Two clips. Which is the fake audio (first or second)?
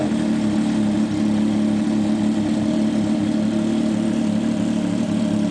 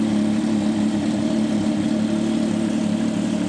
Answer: second